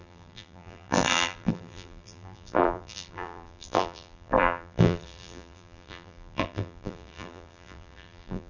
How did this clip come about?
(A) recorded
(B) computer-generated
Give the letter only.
B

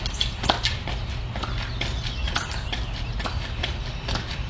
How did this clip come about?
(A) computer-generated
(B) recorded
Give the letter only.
B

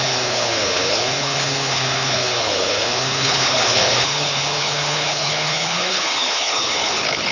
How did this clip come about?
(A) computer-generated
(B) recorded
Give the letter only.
A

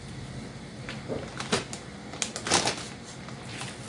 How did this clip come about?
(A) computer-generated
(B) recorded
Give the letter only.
B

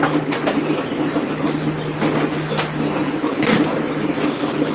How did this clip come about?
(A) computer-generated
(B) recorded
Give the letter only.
B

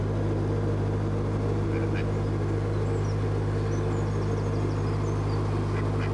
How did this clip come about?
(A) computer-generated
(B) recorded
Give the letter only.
B